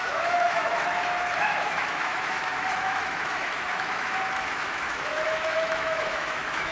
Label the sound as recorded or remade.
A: remade